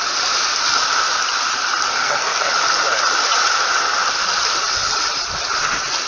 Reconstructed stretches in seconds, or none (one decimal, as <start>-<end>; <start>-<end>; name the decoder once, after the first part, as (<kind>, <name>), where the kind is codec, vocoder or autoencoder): 2.0-2.5 (codec, SNAC)